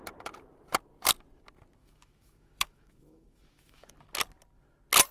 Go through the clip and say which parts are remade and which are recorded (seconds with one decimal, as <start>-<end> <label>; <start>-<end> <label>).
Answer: 0.0-1.8 recorded; 1.8-3.9 remade; 3.9-5.1 recorded